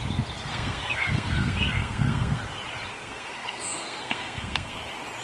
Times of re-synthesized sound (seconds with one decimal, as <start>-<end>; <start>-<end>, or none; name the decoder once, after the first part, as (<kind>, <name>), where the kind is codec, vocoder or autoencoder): 0.5-2.4 (codec, SNAC); 2.9-4.8